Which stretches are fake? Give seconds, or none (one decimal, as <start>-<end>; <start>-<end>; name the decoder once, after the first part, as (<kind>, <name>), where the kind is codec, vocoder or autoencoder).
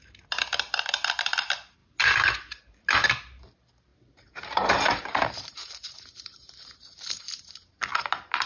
3.9-7.5 (vocoder, BigVGAN v2)